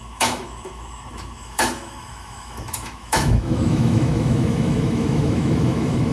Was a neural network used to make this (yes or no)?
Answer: yes